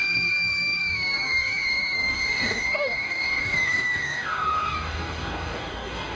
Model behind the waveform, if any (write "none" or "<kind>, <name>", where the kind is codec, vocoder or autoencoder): codec, DAC